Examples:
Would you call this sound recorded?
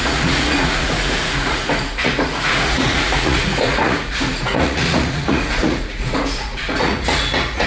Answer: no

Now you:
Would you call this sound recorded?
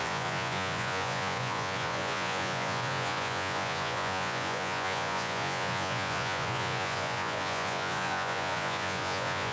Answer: no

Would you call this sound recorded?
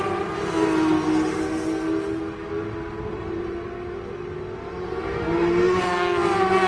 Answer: yes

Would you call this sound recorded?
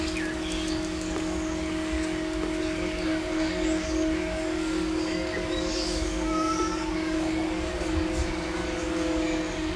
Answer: no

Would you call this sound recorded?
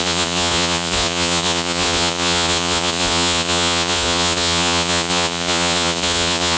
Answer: no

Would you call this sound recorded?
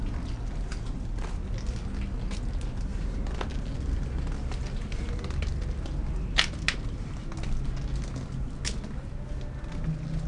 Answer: yes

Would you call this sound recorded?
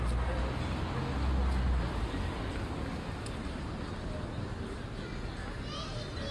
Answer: yes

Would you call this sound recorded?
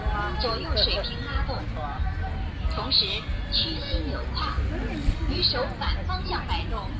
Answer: yes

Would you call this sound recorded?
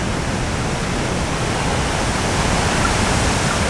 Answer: yes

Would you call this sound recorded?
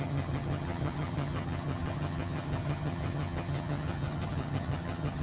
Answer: no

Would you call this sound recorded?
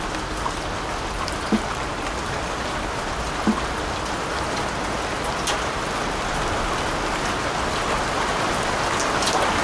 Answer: yes